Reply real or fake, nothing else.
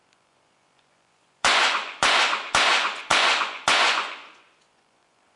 fake